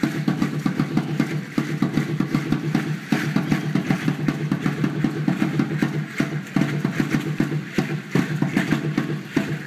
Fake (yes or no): no